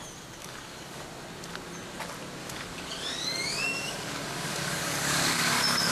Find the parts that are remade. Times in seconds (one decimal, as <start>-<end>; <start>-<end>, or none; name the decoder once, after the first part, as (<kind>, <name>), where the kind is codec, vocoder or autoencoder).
0.4-1.0 (codec, DAC); 2.4-5.9